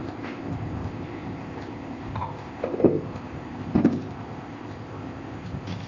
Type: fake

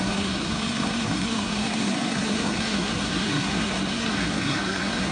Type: fake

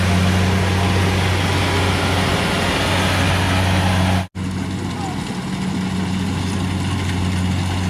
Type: real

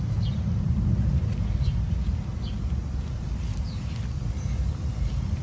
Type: real